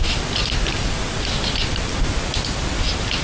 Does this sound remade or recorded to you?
recorded